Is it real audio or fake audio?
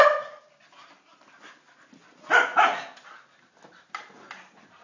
real